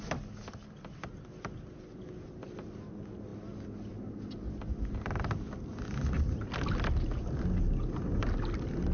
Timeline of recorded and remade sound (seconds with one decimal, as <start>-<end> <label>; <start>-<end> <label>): 0.0-8.9 recorded